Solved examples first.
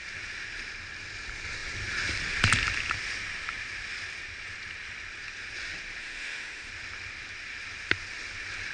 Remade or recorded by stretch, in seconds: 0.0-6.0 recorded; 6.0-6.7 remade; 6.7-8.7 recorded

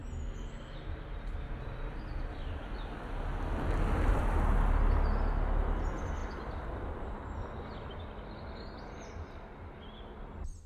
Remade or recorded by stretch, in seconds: 0.0-10.7 recorded

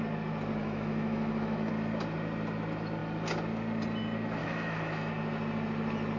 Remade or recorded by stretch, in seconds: 0.0-0.6 recorded; 0.6-1.7 remade; 1.7-4.4 recorded; 4.4-5.1 remade; 5.1-6.2 recorded

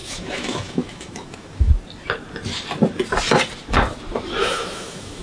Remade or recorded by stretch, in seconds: 0.0-1.7 remade; 1.7-4.4 recorded; 4.4-5.2 remade

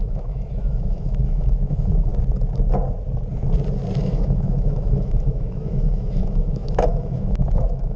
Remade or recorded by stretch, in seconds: 0.0-2.1 remade; 2.1-4.0 recorded; 4.0-8.0 remade

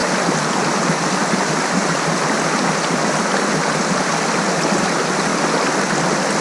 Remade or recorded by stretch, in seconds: 0.0-6.4 recorded